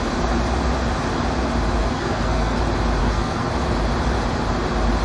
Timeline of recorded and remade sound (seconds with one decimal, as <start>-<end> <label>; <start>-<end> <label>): 0.0-1.8 recorded; 1.8-2.6 remade; 2.6-3.0 recorded; 3.0-3.5 remade; 3.5-5.0 recorded

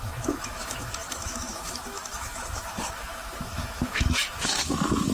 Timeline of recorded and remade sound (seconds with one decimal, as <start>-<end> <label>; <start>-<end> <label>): 0.0-5.1 remade